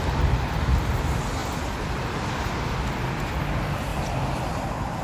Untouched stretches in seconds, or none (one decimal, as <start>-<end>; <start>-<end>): 0.0-1.4; 2.3-3.9; 4.6-5.0